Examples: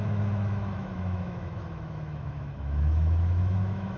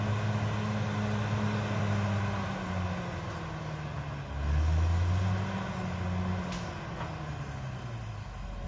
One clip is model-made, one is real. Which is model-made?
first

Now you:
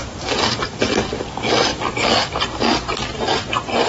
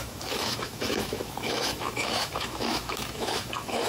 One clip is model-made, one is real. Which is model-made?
second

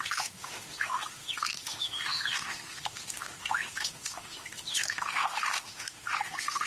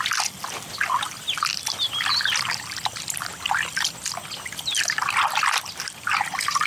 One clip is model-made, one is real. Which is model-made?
first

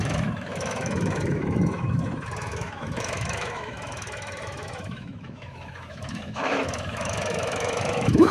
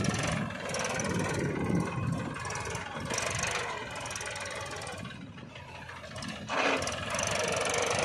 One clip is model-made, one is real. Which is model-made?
first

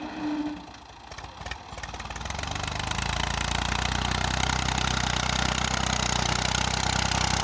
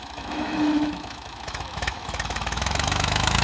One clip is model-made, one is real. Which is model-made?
second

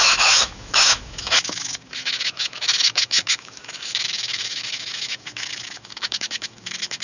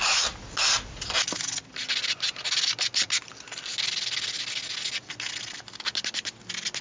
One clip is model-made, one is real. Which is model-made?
first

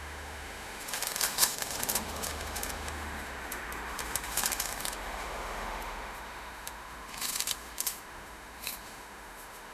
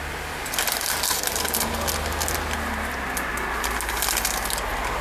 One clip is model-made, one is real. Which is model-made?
first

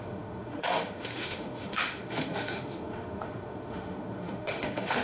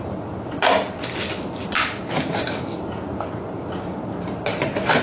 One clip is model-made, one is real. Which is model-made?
first